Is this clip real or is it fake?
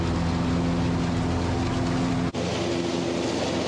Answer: real